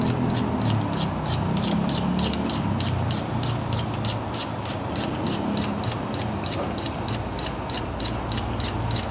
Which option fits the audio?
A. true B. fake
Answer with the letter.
A